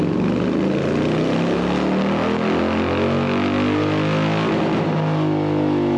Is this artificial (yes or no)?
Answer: no